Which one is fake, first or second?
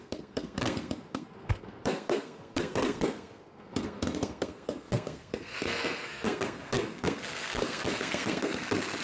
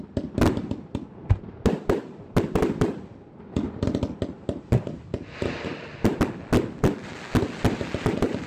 first